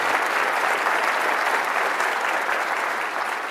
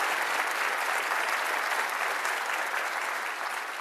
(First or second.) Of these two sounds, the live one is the second